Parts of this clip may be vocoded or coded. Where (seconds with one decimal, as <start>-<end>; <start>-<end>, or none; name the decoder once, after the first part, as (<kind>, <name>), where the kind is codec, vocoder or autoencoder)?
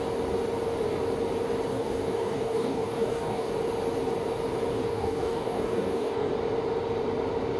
1.7-3.5 (codec, DAC); 4.7-6.3